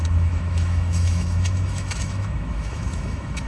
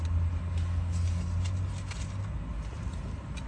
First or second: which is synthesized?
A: first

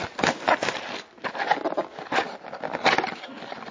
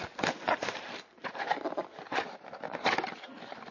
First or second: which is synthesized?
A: second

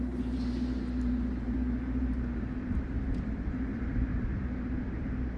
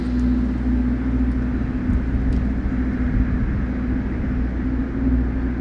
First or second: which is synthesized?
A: first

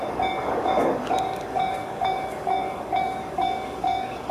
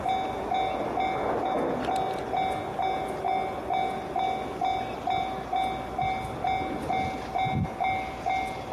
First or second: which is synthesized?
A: first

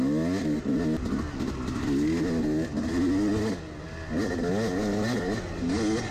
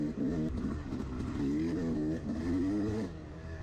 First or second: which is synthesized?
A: second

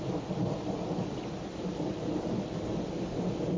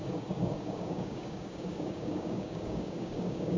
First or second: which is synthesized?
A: second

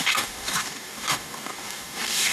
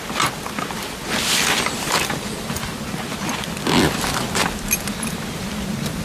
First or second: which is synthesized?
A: first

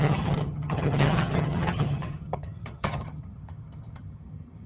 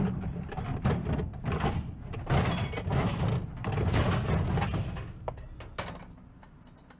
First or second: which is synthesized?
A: first